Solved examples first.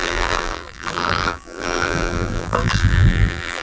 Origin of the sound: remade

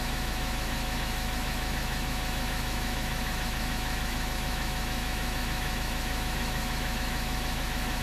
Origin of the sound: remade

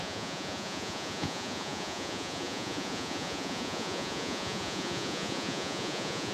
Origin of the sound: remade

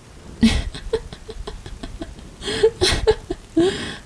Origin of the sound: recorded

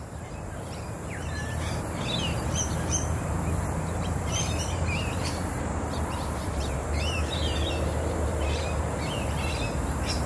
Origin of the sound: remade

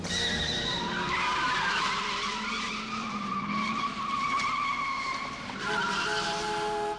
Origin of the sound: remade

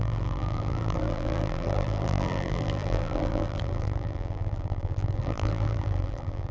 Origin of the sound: remade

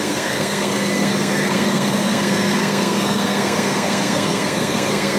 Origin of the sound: remade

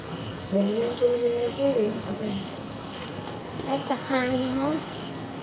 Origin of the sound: remade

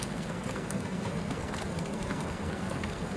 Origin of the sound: remade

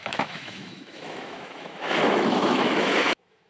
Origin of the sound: remade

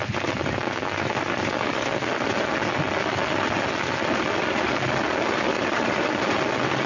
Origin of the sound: recorded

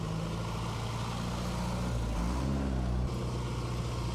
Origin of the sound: recorded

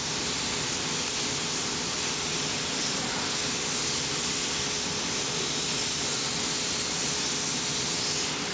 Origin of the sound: recorded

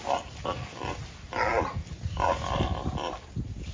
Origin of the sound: recorded